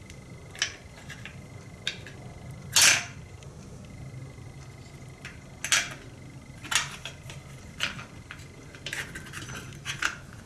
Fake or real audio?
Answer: real